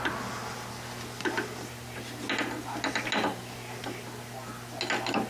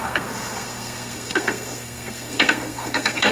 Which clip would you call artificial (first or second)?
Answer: second